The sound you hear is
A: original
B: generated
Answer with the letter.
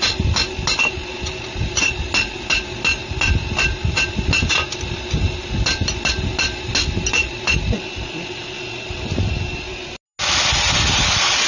A